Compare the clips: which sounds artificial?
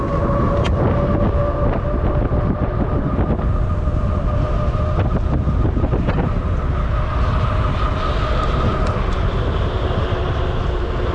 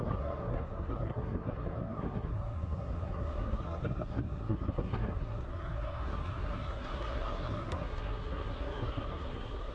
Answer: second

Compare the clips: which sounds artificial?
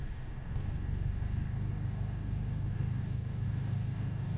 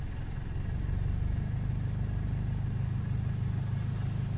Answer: first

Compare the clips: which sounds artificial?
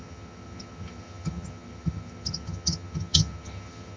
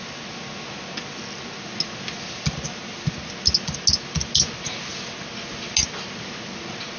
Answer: first